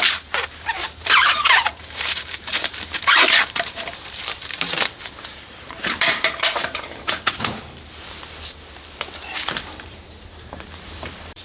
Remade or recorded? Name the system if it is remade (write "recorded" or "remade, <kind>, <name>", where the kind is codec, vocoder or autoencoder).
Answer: remade, vocoder, BigVGAN v2